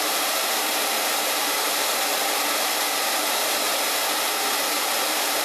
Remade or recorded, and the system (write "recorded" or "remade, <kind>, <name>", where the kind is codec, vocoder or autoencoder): remade, vocoder, BigVGAN v2